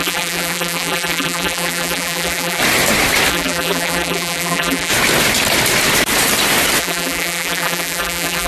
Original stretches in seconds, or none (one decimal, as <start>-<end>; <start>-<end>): 2.6-3.3; 4.9-6.8